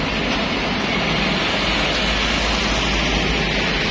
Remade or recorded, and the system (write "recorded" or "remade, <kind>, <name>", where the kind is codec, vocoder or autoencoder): recorded